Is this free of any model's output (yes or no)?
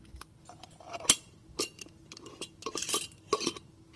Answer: yes